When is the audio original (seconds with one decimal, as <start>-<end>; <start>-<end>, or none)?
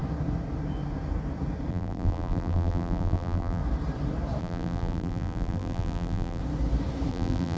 0.0-1.7; 3.6-4.4; 6.4-7.1